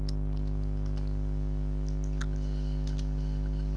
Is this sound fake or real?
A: real